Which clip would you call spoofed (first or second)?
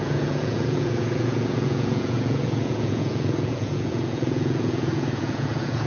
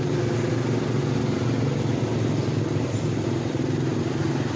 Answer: first